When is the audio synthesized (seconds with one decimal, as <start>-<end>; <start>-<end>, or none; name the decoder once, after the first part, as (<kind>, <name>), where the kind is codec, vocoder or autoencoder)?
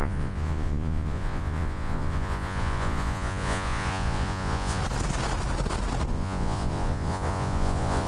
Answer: 0.0-4.8 (vocoder, Vocos); 6.1-8.1